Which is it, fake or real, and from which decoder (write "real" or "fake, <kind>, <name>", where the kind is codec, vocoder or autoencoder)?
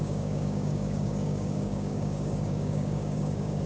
fake, codec, DAC